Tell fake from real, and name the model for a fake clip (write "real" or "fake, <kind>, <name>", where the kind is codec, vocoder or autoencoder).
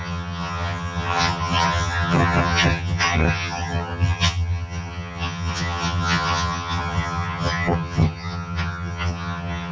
fake, vocoder, HiFi-GAN